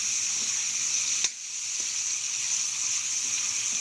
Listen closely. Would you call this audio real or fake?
real